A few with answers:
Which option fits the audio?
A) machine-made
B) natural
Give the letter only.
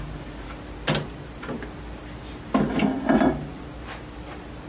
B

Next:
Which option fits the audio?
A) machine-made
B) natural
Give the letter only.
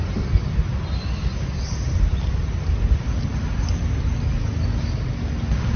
B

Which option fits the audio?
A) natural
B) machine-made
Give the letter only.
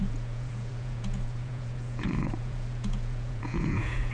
B